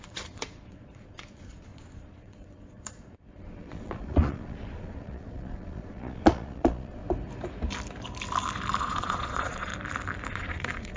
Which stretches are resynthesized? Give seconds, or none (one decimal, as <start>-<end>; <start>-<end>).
0.0-7.0; 8.8-9.7; 10.3-11.0